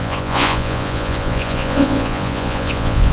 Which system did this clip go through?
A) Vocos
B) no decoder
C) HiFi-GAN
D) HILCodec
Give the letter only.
A